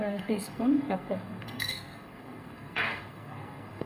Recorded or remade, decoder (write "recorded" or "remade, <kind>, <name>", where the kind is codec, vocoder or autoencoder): remade, codec, SNAC